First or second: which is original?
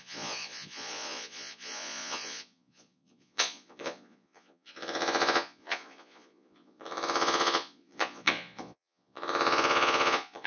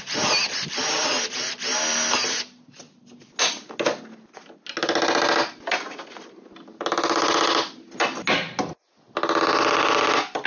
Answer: second